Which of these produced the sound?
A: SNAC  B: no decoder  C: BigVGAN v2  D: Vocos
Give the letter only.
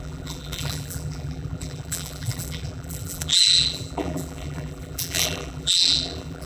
C